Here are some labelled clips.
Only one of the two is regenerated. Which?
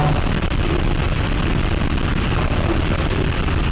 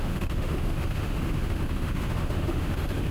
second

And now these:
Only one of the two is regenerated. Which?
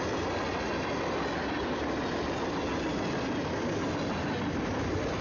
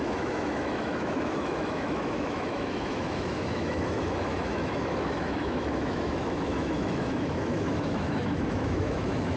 second